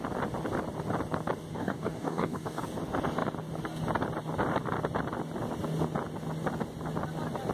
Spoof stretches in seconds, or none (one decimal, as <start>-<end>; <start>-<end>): 1.5-2.6